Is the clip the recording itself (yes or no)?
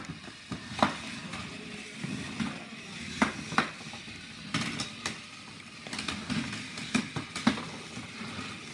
yes